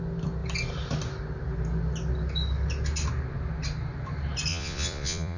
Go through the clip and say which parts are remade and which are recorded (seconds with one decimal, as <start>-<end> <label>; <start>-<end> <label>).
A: 0.0-4.5 recorded; 4.5-5.4 remade